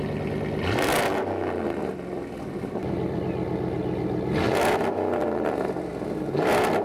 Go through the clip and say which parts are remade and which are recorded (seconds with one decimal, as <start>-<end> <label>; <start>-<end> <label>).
0.0-1.9 recorded; 1.9-3.2 remade; 3.2-5.2 recorded; 5.2-5.9 remade; 5.9-6.8 recorded